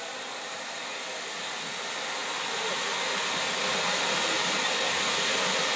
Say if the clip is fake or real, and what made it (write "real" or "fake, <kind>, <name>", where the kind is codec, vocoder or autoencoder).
real